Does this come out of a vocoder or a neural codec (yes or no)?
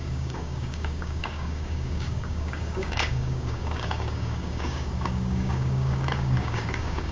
yes